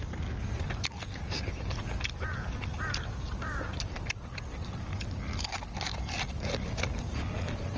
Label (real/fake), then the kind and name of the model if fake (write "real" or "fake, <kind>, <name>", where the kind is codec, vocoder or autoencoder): real